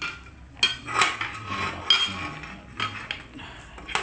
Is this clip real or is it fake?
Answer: real